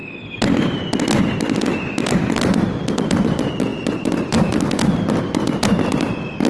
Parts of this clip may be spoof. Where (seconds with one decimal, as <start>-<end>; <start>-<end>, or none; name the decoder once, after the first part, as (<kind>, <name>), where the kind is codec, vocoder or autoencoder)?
0.0-2.9 (vocoder, BigVGAN v2); 3.7-5.0